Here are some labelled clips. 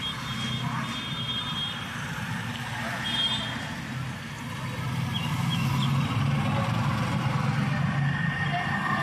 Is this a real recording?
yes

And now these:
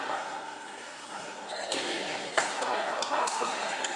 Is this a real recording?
no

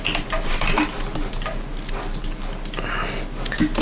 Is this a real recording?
yes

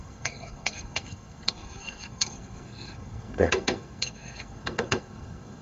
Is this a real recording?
no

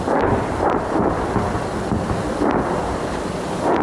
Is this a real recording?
yes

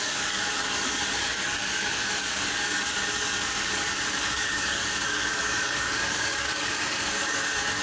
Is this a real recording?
no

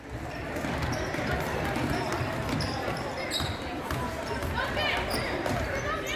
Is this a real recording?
yes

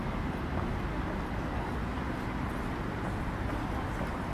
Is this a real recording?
yes